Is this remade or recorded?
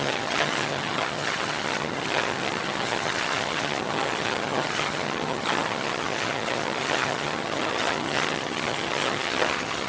remade